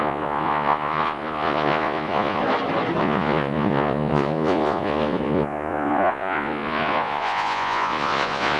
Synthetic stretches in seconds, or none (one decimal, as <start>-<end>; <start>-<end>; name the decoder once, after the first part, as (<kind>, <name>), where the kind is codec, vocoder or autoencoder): 0.0-2.4 (vocoder, Vocos); 3.0-8.6